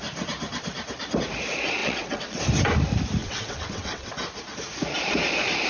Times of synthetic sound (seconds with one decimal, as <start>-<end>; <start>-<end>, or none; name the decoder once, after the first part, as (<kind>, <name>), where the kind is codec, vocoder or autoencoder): 1.8-2.4 (vocoder, WaveNeXt); 3.2-4.1